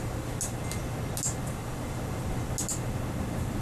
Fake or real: real